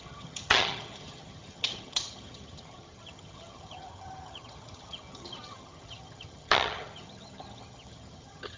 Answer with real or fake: fake